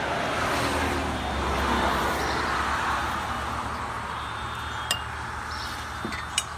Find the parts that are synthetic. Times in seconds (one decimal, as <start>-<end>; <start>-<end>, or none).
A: none